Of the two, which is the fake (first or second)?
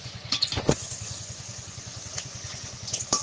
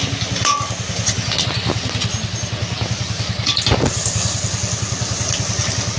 first